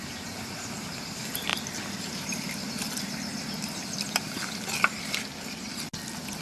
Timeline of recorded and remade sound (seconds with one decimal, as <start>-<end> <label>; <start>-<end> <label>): 0.0-1.5 remade; 1.5-2.0 recorded; 2.0-3.3 remade; 3.3-6.4 recorded